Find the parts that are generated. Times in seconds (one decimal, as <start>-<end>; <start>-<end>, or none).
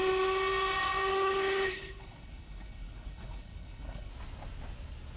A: 1.1-4.1